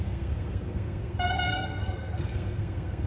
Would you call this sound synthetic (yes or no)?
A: yes